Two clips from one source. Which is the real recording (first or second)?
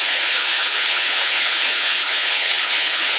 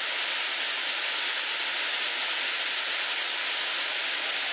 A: second